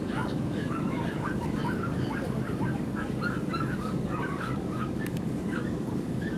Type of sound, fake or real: fake